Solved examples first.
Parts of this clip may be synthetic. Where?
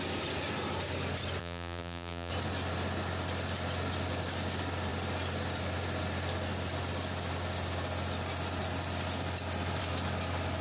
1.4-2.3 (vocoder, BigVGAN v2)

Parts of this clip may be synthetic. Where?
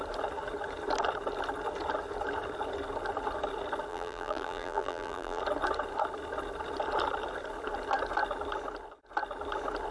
3.9-5.4 (vocoder, BigVGAN v2)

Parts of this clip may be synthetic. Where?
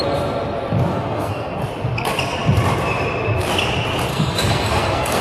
0.9-1.6 (codec, SNAC); 4.1-5.2